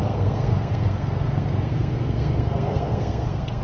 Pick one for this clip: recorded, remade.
remade